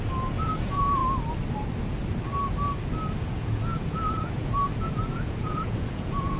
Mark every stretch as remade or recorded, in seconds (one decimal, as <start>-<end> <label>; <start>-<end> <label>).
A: 0.0-1.0 remade; 1.0-3.2 recorded; 3.2-6.4 remade